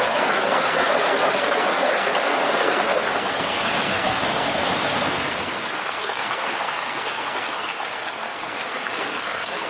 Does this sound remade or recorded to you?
remade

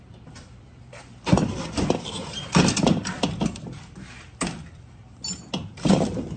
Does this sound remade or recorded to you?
remade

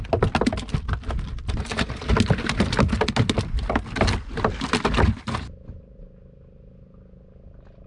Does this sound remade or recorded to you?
recorded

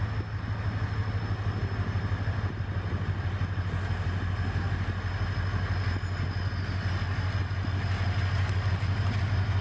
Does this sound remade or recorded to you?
recorded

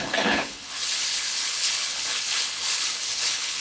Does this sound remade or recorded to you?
remade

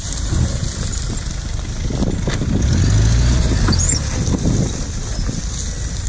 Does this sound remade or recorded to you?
recorded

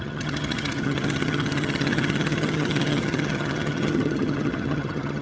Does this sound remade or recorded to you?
remade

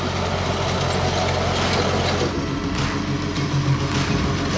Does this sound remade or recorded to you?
recorded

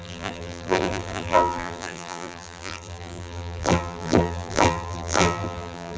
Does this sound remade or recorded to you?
remade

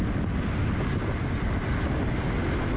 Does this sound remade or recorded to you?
recorded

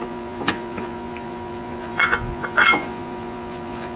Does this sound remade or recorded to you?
remade